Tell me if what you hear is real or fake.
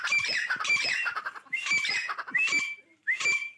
fake